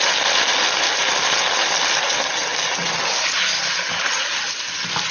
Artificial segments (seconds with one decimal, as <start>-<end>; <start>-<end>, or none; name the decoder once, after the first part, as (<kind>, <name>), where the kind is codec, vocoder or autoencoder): none